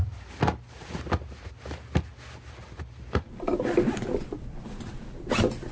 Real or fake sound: real